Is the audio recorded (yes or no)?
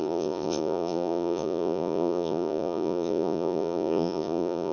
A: no